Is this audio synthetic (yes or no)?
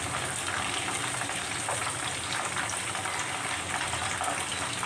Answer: no